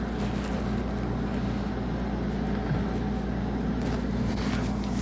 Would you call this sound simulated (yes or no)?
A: no